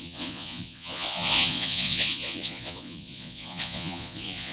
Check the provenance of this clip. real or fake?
fake